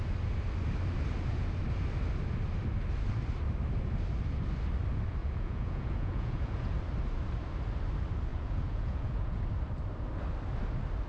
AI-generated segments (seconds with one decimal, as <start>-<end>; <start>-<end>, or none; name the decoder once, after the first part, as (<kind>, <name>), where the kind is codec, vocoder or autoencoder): 5.2-6.7 (vocoder, Vocos); 8.3-9.4